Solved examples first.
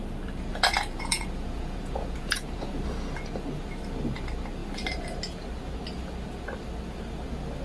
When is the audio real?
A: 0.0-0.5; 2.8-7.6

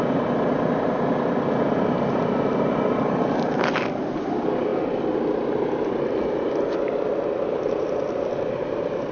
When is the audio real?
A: 0.0-9.1

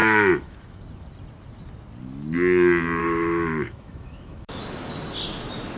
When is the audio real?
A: 0.8-3.0; 4.6-5.8

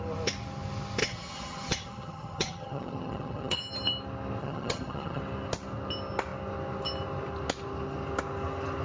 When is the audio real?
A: 0.0-1.0; 3.6-4.4; 5.2-8.8